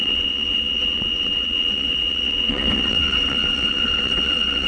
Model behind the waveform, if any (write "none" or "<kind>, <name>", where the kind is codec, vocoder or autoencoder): vocoder, WaveNeXt